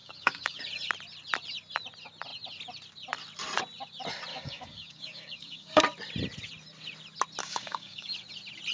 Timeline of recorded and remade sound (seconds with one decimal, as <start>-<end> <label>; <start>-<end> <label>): 0.0-0.6 remade; 0.6-4.3 recorded; 4.3-5.8 remade; 5.8-7.4 recorded; 7.4-8.1 remade; 8.1-8.7 recorded